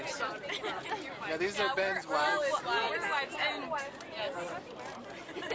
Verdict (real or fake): real